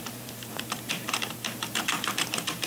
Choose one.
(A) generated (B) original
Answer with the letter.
A